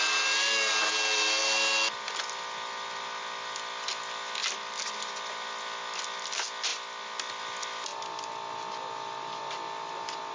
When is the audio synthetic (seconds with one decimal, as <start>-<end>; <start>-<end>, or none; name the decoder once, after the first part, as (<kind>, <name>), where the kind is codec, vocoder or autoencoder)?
none